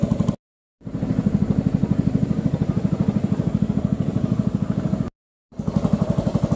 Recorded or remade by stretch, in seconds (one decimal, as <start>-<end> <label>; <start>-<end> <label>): 0.0-1.8 recorded; 1.8-2.4 remade; 2.4-5.3 recorded; 5.3-6.6 remade